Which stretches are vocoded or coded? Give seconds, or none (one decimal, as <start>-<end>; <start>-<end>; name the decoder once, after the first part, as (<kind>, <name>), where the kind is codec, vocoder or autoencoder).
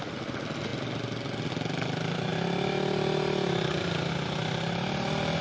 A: none